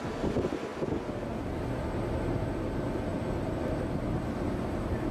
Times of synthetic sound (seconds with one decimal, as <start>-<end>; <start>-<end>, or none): none